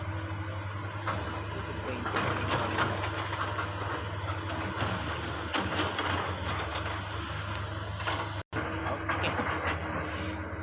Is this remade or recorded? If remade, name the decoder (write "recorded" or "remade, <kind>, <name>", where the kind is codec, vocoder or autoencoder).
recorded